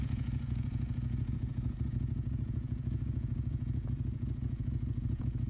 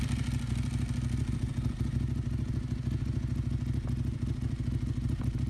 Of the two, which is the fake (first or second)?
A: first